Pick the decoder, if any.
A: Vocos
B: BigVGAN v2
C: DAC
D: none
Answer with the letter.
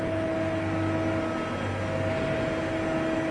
D